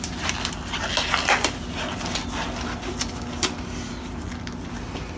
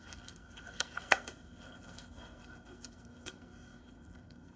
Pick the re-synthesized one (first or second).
second